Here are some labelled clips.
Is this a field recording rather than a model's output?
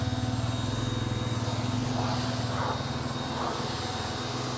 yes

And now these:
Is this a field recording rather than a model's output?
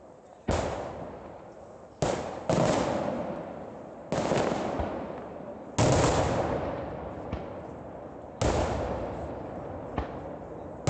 yes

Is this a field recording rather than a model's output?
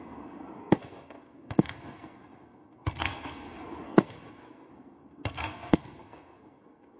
no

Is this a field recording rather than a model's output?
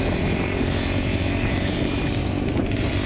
no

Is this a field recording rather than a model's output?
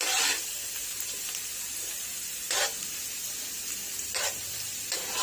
yes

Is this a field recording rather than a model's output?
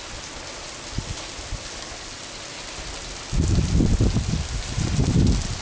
yes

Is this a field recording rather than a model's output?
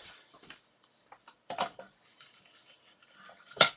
no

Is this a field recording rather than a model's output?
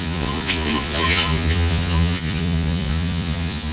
no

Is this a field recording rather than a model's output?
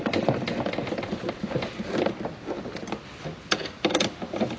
yes